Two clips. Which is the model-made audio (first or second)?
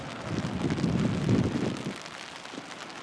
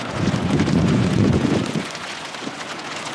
second